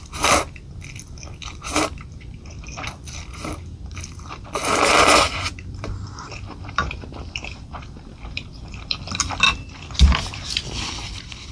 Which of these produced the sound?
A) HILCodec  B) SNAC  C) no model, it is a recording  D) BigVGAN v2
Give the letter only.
D